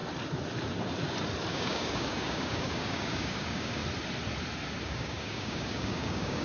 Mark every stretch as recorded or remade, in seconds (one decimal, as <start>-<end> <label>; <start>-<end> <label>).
0.0-1.5 recorded; 1.5-3.8 remade; 3.8-4.8 recorded; 4.8-6.4 remade